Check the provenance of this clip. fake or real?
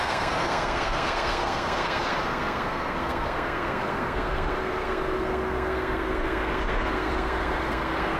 fake